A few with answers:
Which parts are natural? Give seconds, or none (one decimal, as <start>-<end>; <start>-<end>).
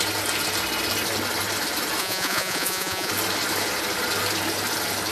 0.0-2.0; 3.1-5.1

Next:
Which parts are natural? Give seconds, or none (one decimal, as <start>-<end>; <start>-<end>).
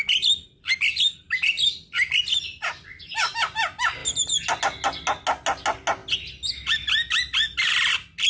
0.0-8.3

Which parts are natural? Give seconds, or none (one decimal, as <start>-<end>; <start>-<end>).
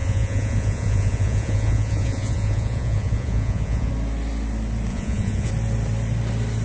3.9-4.9; 5.5-6.6